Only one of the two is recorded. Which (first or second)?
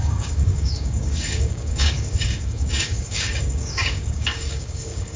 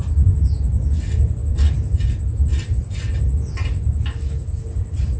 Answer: second